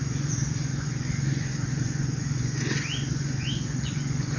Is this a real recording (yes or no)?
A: no